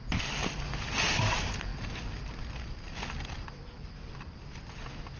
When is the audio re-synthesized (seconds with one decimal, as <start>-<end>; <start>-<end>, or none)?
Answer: none